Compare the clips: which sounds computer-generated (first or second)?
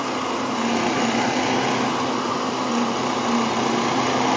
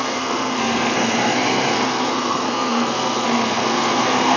second